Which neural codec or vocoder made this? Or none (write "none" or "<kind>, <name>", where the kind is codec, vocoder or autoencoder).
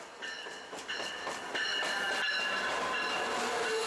none